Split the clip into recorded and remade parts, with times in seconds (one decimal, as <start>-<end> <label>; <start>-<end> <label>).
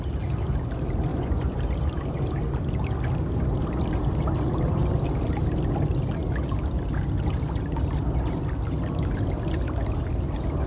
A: 0.0-1.1 recorded; 1.1-1.6 remade; 1.6-10.7 recorded